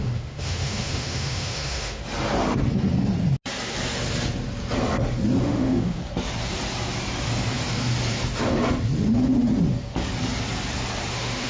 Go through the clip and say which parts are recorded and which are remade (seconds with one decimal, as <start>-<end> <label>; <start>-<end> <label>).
0.0-2.0 remade; 2.0-5.4 recorded; 5.4-6.0 remade; 6.0-11.1 recorded; 11.1-11.5 remade